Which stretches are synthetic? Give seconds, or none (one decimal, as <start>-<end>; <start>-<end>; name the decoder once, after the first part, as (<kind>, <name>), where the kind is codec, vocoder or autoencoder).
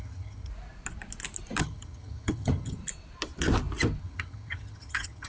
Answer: 0.0-0.5 (vocoder, HiFi-GAN); 1.6-2.8; 4.0-5.3